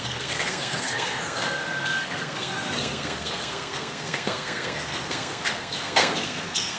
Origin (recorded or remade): remade